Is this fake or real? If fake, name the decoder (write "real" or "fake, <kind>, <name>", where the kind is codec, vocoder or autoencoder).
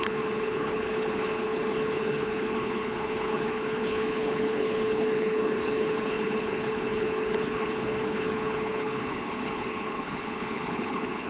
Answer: fake, codec, HILCodec